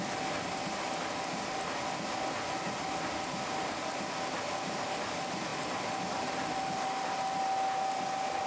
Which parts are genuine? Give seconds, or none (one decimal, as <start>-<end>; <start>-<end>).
0.0-5.5; 7.4-8.5